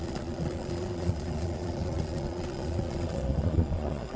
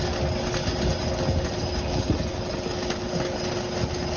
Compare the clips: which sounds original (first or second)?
second